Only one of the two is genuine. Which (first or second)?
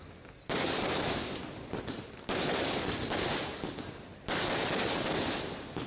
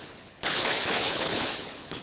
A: first